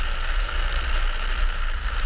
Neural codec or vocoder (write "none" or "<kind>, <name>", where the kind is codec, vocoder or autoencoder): none